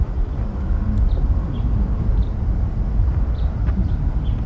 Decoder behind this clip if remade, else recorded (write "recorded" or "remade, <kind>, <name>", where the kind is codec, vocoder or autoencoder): recorded